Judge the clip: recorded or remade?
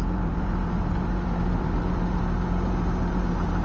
remade